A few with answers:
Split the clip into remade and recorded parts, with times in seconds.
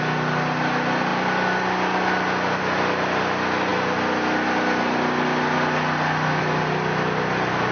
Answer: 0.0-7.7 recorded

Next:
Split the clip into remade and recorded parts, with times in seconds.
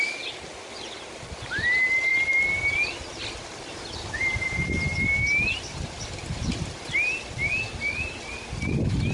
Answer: 0.0-9.1 recorded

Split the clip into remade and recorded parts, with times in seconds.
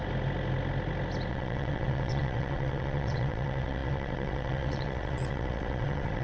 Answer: 0.0-1.3 recorded; 1.3-6.2 remade